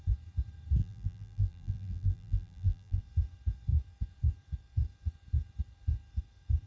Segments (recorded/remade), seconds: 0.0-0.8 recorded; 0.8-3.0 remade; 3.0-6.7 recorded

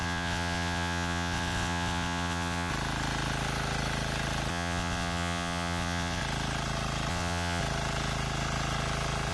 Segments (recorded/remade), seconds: 0.0-2.7 remade; 2.7-4.5 recorded; 4.5-6.2 remade; 6.2-7.1 recorded; 7.1-7.6 remade; 7.6-9.3 recorded